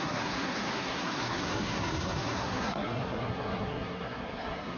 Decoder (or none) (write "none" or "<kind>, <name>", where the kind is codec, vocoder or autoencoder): codec, SNAC